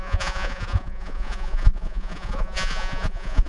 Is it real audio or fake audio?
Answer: fake